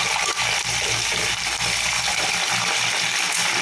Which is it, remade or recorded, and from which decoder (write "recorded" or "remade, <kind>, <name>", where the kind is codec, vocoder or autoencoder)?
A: recorded